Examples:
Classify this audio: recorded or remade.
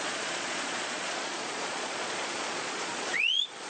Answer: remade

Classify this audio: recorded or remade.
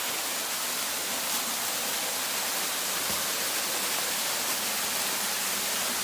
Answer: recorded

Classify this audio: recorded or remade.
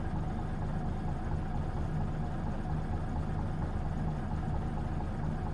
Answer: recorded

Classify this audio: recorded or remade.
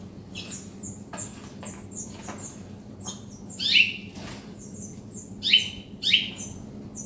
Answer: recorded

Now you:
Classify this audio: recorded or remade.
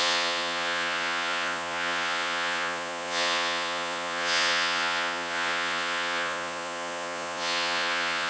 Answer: remade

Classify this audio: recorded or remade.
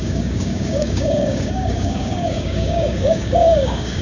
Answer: remade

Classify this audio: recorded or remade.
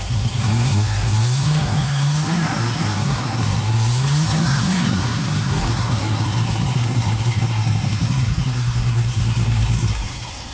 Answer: remade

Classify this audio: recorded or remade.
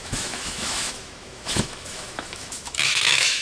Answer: remade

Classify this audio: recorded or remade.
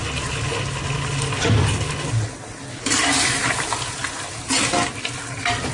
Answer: recorded